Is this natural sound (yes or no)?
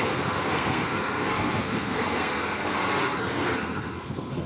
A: no